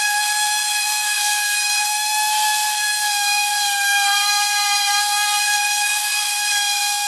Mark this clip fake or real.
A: fake